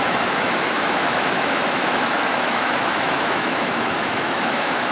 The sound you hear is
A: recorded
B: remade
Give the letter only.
B